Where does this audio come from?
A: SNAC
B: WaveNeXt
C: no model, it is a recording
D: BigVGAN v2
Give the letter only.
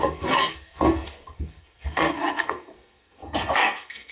A